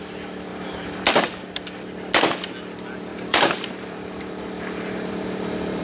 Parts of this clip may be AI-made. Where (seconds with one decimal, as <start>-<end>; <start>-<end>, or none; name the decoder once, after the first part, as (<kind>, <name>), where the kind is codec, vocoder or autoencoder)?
0.5-1.0 (vocoder, BigVGAN v2); 3.1-5.8